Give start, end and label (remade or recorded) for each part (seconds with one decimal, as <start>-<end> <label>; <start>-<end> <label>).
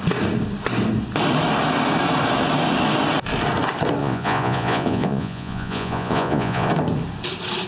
0.0-4.0 recorded; 4.0-6.7 remade; 6.7-7.7 recorded